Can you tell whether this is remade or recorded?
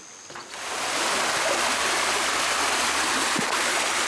recorded